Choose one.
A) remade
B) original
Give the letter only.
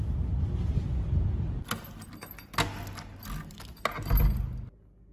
B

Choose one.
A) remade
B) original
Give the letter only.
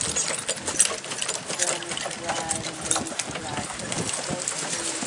B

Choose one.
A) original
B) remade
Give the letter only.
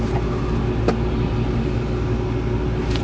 A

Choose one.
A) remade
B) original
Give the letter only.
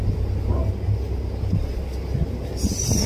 B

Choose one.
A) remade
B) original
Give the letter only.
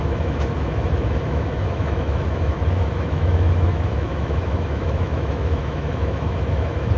A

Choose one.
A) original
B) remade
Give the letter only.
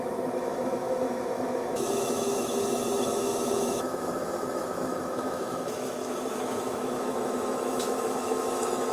B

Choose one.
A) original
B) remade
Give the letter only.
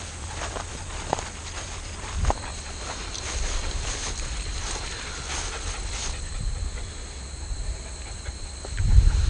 A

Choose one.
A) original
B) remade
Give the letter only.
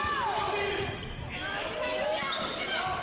A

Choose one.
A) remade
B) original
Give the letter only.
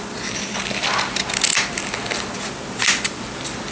B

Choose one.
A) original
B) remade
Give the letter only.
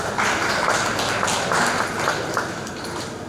A